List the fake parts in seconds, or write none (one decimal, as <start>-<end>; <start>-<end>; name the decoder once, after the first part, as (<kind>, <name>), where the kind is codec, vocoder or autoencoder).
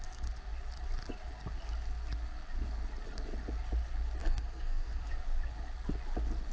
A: 4.2-5.0 (codec, SNAC)